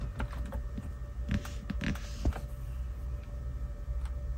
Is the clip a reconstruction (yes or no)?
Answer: no